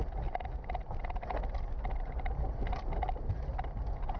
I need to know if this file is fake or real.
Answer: real